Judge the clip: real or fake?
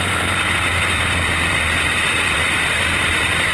fake